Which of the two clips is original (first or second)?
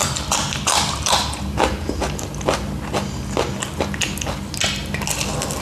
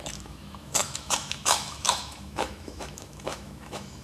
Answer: first